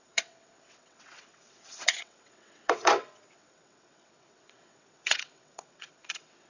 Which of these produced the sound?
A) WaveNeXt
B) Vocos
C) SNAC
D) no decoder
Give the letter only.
A